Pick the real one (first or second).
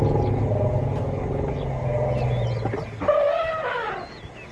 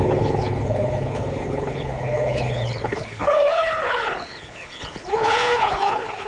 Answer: first